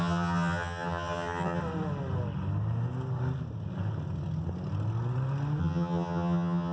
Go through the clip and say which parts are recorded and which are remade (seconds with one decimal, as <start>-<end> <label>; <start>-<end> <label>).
0.0-1.6 remade; 1.6-5.6 recorded; 5.6-6.7 remade